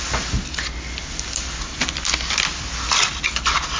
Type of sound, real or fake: real